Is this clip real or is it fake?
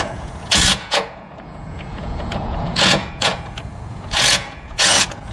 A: fake